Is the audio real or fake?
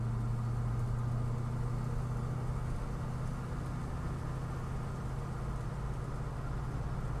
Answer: real